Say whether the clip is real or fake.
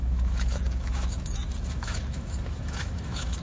fake